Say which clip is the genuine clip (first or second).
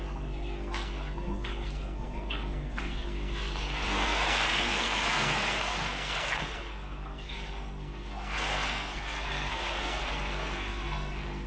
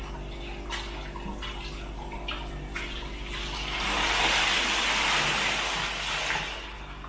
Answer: second